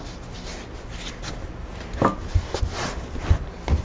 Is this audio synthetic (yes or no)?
no